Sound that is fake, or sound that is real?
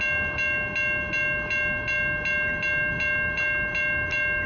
real